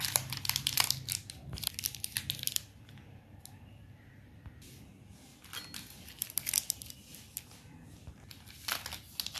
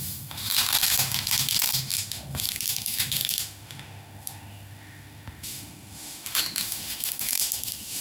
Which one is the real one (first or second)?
first